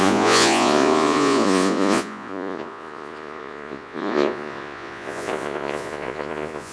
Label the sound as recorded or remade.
remade